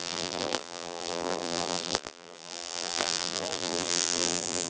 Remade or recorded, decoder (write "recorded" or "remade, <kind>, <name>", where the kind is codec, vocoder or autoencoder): remade, vocoder, BigVGAN v2